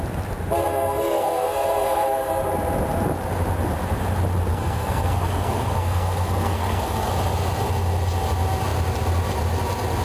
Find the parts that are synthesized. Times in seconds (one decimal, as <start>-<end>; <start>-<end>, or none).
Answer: 0.7-2.3; 4.5-7.1